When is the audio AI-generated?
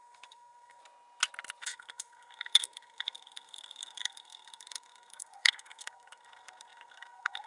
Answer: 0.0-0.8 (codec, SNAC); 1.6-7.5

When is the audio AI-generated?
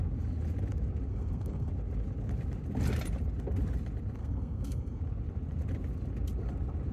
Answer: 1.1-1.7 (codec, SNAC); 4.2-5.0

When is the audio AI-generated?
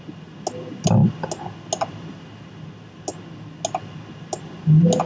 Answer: none